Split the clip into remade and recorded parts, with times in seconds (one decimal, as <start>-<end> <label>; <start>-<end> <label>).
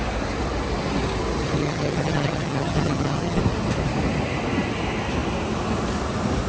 0.0-1.6 recorded; 1.6-3.4 remade; 3.4-6.5 recorded